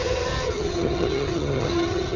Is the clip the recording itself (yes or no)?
no